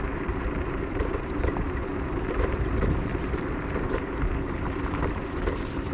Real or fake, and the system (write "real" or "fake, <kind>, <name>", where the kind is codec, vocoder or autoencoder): fake, vocoder, BigVGAN v2